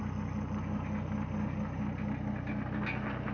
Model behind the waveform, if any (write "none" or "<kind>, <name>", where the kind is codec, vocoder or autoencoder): none